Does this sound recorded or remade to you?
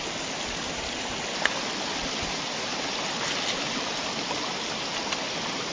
recorded